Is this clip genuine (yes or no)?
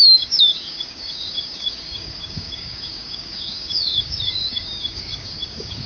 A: no